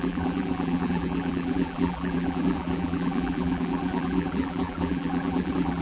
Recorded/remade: remade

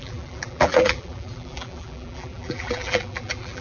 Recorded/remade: remade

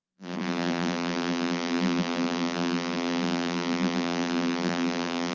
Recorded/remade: remade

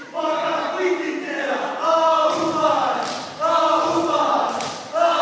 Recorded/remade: recorded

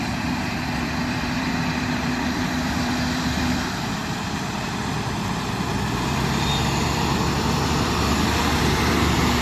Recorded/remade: remade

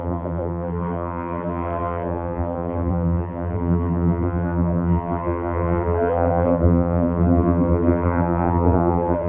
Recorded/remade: remade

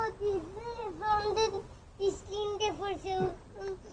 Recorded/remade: recorded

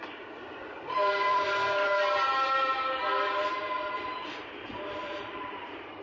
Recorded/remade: remade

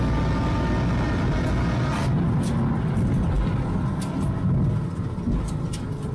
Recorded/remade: recorded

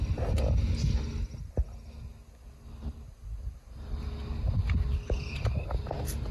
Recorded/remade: recorded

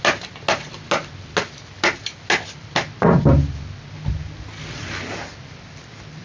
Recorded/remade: recorded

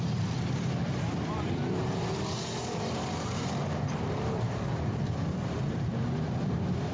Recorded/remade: remade